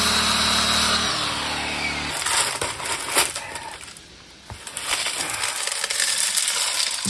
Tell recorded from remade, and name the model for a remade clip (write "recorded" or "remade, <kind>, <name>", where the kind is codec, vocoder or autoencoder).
recorded